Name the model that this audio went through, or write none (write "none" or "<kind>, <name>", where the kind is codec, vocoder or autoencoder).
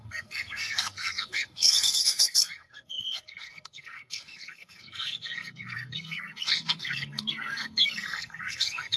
codec, SNAC